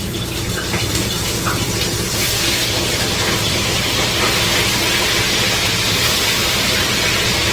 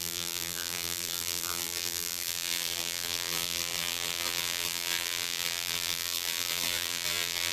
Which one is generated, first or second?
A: second